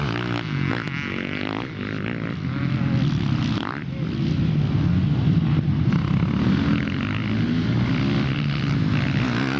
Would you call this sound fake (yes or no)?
no